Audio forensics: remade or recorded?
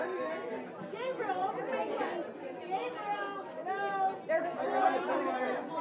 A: recorded